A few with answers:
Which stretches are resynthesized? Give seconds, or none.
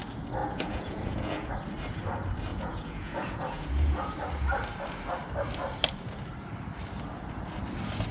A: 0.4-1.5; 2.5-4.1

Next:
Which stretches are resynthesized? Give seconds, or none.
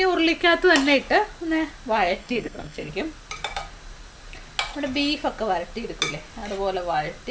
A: 2.2-2.9